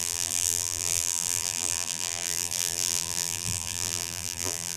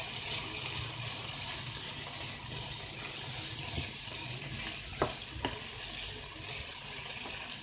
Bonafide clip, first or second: second